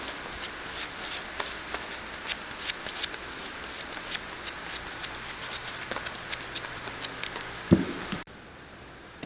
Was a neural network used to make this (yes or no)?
no